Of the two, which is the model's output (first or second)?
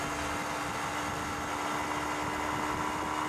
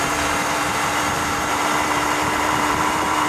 second